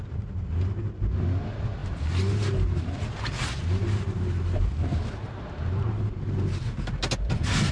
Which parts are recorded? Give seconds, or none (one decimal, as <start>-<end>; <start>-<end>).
0.0-7.7